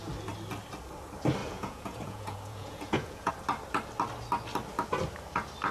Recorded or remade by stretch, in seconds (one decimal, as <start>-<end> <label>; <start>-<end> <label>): 0.0-1.4 recorded; 1.4-3.3 remade; 3.3-5.7 recorded